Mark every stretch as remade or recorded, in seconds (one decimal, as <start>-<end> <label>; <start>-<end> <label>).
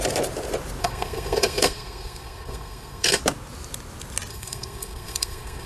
0.0-0.8 recorded; 0.8-3.2 remade; 3.2-4.3 recorded; 4.3-5.7 remade